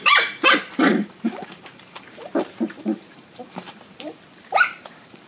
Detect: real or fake fake